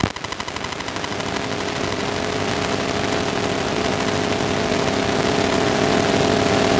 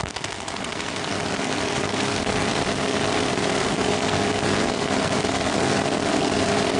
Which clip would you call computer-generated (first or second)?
second